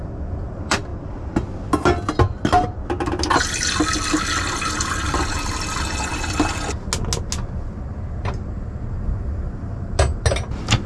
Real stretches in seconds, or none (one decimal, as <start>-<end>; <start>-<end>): 0.0-10.9